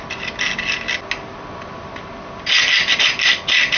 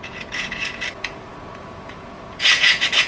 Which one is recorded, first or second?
first